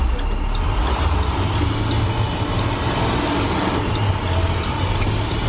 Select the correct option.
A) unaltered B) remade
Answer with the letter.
A